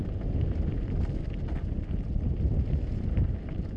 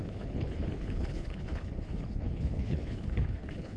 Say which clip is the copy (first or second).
second